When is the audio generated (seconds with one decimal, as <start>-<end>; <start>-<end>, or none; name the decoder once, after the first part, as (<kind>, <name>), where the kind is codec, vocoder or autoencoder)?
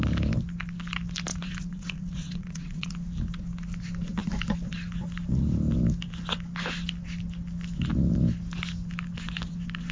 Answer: 1.3-2.9 (vocoder, WaveNeXt)